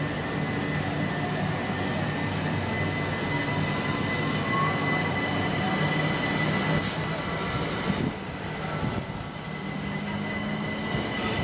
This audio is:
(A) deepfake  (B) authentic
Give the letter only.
B